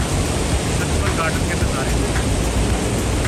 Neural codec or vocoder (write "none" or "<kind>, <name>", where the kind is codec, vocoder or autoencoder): none